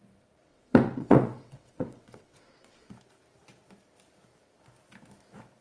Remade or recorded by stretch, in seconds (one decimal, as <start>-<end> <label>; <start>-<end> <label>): 0.0-0.5 recorded; 0.5-2.9 remade; 2.9-5.6 recorded